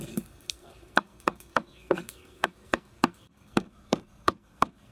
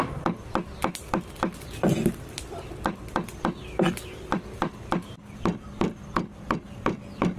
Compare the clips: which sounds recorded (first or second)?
second